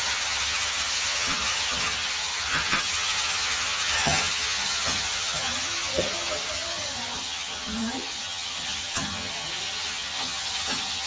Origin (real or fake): fake